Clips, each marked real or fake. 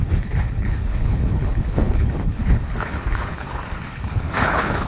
fake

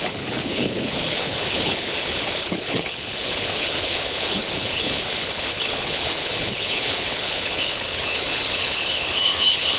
fake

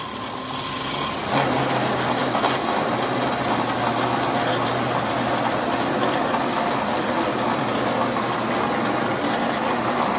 real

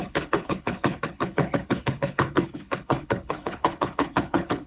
fake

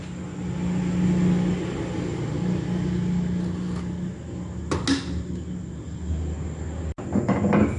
real